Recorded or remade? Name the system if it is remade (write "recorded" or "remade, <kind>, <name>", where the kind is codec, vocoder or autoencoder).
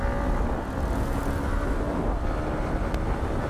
recorded